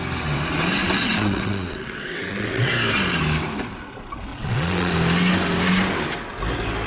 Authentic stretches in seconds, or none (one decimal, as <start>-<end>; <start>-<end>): 0.0-0.8; 2.7-4.3; 4.9-6.9